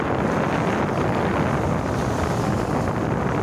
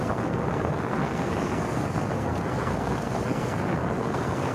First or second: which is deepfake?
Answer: second